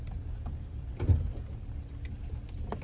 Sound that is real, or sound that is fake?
real